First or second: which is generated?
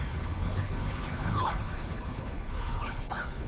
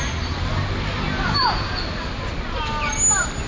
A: first